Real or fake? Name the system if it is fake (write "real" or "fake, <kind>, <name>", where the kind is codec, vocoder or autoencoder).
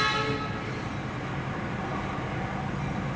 real